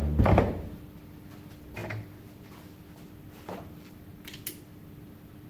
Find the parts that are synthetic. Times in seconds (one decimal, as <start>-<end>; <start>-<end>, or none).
none